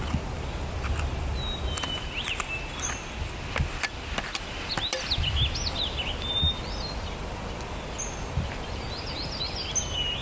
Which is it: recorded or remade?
recorded